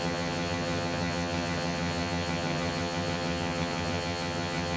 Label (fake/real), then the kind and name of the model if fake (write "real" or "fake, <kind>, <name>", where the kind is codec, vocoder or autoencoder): fake, vocoder, HiFi-GAN